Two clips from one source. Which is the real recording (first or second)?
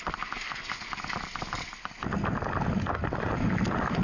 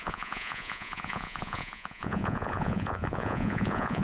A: first